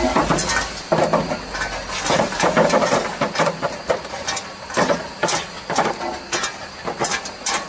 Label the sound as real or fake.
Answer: real